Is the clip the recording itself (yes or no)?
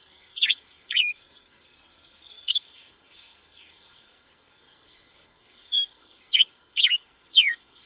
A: no